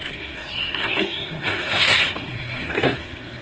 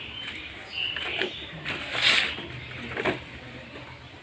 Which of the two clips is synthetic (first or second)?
first